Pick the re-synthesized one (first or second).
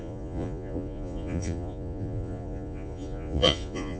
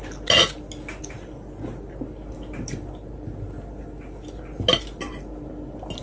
first